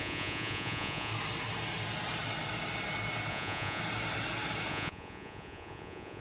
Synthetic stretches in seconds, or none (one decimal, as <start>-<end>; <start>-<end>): 0.0-1.1; 3.3-3.8; 4.7-6.2

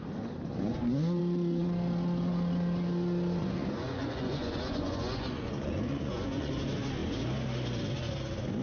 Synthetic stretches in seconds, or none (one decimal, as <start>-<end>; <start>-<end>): 0.5-1.2; 3.4-6.5

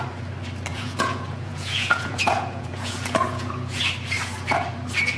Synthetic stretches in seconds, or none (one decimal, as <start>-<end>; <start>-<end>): 0.7-3.8

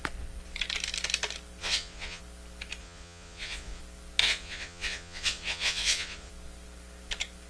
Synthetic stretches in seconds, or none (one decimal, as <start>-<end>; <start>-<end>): 1.6-2.2; 2.8-3.8; 4.2-6.3

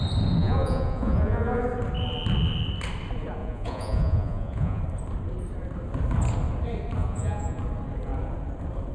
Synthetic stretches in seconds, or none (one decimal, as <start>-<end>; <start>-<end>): 0.4-1.6; 3.4-4.8; 7.0-7.6

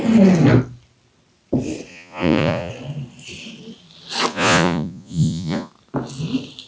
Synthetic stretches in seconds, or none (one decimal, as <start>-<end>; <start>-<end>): 1.9-2.7; 4.3-5.7

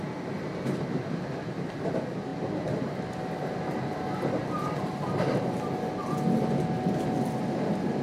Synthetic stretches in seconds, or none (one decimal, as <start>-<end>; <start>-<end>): none

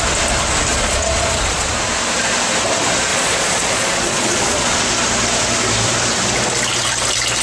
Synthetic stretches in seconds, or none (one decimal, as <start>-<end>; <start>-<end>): 0.7-1.7; 3.1-4.8